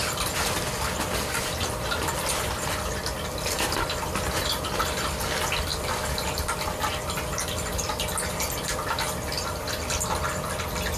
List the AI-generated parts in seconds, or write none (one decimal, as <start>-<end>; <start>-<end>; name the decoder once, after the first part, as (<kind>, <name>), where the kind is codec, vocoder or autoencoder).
none